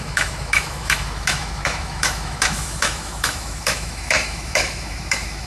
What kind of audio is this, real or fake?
fake